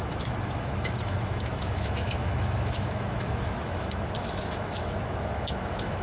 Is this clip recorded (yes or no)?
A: no